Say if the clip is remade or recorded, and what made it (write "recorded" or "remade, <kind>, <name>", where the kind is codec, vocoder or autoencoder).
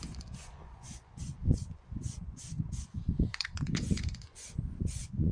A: remade, vocoder, Vocos